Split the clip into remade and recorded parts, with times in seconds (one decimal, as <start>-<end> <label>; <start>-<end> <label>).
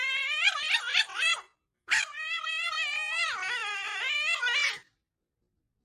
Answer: 0.0-5.8 recorded